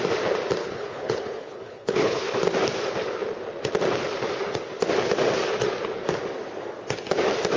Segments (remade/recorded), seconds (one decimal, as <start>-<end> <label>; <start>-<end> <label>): 0.0-0.6 recorded; 0.6-2.2 remade; 2.2-7.6 recorded